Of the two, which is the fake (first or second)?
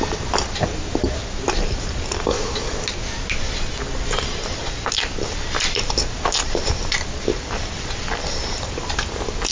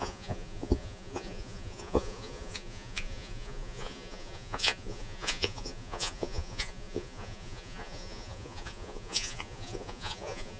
second